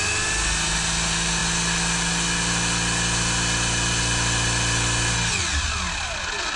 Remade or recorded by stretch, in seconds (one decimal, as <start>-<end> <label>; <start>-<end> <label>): 0.0-6.6 recorded